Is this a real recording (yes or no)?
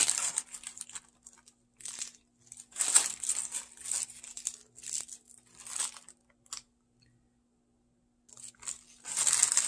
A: yes